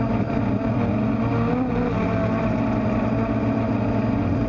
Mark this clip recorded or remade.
recorded